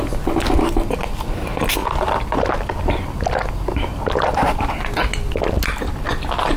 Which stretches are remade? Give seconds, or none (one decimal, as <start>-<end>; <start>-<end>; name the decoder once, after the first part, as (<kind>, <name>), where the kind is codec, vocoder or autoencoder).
none